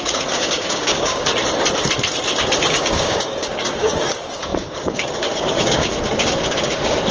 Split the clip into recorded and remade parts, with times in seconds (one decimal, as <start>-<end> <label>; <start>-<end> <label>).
0.0-1.3 remade; 1.3-2.6 recorded; 2.6-7.1 remade